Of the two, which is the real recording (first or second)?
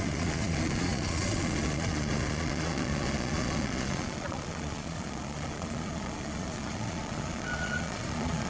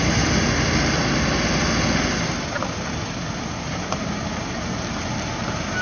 second